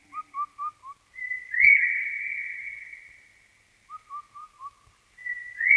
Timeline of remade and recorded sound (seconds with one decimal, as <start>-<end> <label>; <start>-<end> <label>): 0.0-5.8 recorded